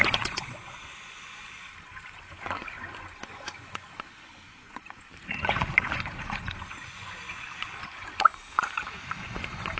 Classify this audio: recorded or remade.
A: remade